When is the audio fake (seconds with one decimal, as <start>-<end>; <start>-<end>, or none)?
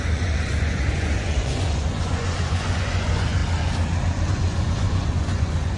0.0-3.4; 4.3-5.8